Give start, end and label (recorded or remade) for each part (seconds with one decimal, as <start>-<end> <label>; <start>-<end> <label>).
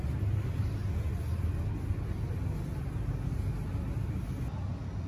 0.0-5.1 recorded